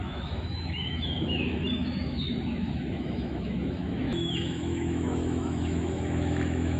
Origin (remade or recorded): remade